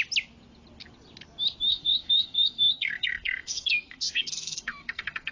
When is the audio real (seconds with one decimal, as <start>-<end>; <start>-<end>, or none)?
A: 0.0-1.7